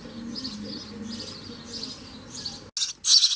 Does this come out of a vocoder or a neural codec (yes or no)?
no